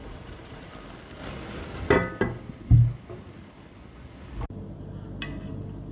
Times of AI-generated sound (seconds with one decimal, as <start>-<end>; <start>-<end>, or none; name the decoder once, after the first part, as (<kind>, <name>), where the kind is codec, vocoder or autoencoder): 0.0-0.7 (vocoder, Vocos)